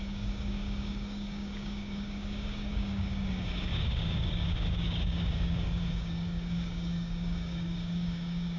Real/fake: fake